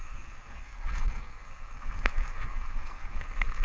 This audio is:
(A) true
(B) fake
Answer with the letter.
B